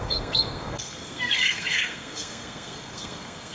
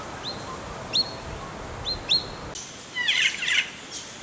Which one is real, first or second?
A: second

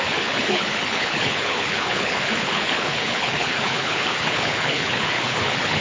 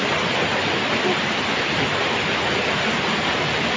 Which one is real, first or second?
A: second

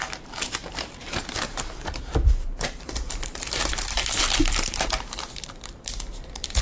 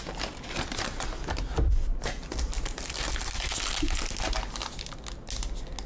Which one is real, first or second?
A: second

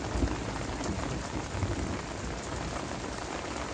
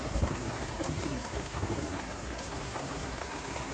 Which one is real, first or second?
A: first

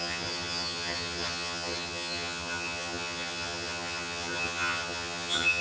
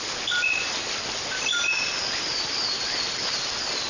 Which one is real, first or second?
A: second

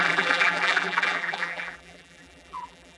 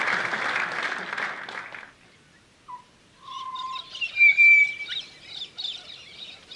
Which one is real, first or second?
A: second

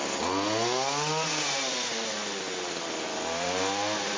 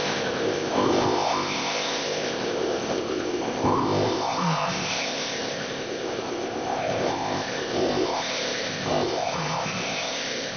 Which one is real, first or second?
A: first